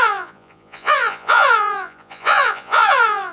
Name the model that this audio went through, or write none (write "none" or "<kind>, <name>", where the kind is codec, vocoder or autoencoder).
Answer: vocoder, Vocos